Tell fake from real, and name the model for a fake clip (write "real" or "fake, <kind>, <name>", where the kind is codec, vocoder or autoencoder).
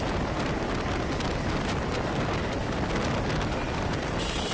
real